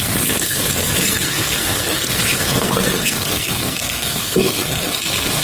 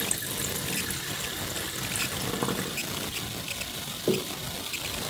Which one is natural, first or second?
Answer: second